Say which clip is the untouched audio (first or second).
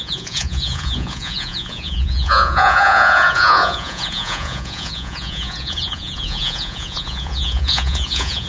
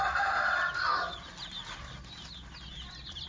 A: second